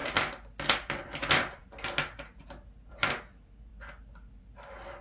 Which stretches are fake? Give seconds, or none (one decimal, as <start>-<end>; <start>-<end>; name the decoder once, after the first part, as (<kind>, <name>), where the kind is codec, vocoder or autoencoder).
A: none